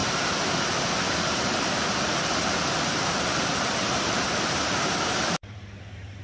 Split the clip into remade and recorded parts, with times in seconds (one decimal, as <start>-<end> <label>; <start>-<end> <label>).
0.0-1.1 recorded; 1.1-6.2 remade